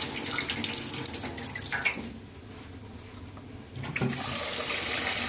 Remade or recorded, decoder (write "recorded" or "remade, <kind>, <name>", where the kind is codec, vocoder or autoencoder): recorded